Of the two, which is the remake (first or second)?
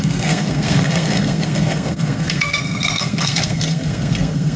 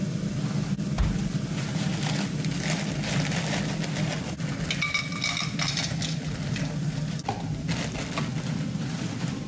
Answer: first